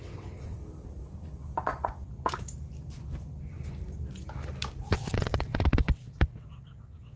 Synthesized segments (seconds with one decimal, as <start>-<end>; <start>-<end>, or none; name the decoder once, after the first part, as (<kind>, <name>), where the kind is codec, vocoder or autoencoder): 0.0-0.6 (vocoder, WaveNeXt); 4.9-7.2

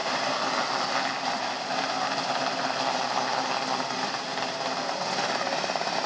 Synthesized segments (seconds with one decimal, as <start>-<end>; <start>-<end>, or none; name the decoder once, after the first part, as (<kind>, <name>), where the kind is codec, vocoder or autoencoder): none